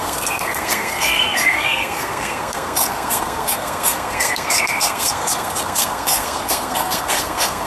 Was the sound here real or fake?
fake